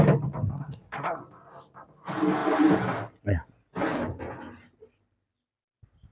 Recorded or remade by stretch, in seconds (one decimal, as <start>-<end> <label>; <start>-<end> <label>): 0.0-0.5 recorded; 0.5-1.2 remade; 1.2-6.1 recorded